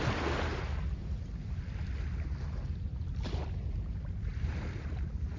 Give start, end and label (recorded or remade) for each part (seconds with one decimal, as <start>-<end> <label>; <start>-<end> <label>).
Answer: 0.0-5.4 recorded